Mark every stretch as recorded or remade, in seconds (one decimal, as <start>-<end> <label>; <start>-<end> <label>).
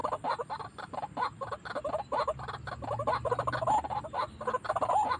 0.0-0.9 remade; 0.9-5.2 recorded